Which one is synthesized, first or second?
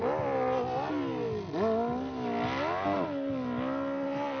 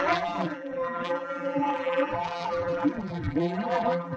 second